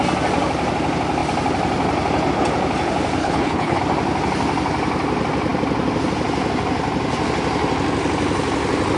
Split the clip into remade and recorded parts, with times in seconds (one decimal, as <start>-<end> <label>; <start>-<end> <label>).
0.0-3.2 recorded; 3.2-3.8 remade; 3.8-9.0 recorded